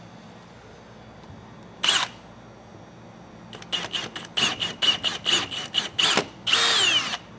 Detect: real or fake real